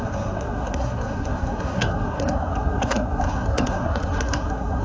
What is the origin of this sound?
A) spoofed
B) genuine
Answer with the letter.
A